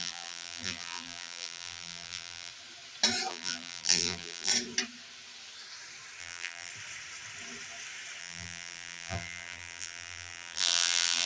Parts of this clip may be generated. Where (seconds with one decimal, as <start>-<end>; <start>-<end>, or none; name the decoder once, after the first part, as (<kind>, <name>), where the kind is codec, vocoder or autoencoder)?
0.0-2.5 (vocoder, BigVGAN v2); 3.3-4.5; 6.2-6.7; 8.2-11.3